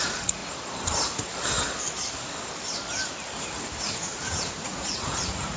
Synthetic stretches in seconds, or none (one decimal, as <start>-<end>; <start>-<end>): 0.0-0.4; 3.8-5.6